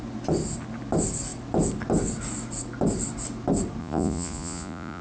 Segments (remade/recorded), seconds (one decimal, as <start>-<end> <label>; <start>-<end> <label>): 0.0-3.8 recorded; 3.8-5.0 remade